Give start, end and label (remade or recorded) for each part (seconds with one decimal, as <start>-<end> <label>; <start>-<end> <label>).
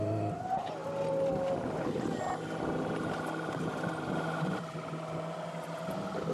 0.0-6.3 recorded